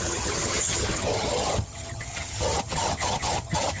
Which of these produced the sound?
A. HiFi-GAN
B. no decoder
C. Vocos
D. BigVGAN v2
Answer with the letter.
A